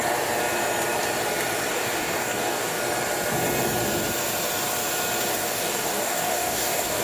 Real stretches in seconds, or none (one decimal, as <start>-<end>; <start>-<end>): 0.0-1.7; 2.8-5.3